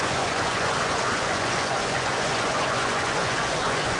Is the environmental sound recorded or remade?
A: remade